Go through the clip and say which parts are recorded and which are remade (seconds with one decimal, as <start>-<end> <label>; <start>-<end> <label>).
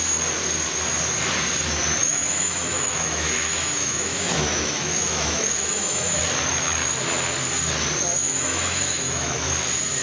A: 0.0-2.0 recorded; 2.0-6.2 remade; 6.2-8.2 recorded; 8.2-9.5 remade; 9.5-10.0 recorded